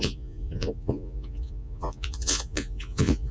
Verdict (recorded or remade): remade